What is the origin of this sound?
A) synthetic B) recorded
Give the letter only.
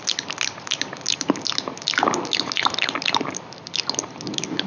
B